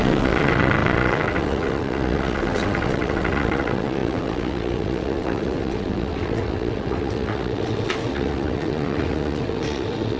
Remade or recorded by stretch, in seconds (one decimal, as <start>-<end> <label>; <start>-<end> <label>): 0.0-10.2 remade